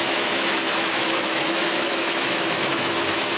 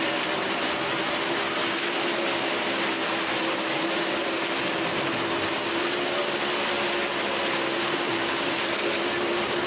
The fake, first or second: first